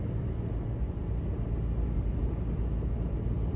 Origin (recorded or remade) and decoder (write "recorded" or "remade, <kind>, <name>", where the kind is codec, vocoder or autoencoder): recorded